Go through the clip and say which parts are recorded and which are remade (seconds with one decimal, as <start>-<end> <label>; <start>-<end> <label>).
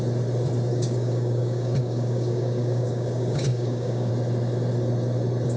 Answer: 0.0-0.7 recorded; 0.7-4.1 remade; 4.1-5.6 recorded